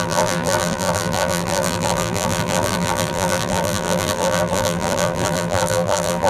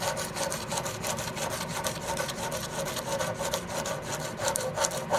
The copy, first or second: first